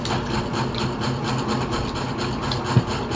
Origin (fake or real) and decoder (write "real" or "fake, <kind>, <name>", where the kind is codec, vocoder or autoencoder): real